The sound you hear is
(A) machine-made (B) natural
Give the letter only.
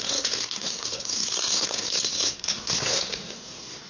A